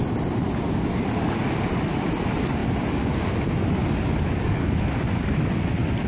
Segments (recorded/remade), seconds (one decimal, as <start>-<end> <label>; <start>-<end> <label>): 0.0-3.8 recorded; 3.8-4.9 remade; 4.9-6.1 recorded